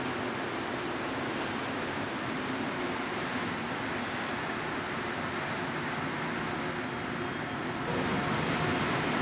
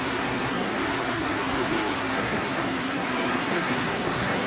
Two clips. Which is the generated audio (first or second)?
second